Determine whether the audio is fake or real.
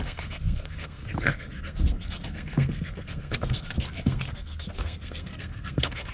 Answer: fake